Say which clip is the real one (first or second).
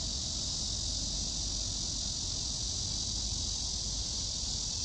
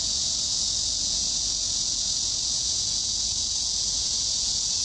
first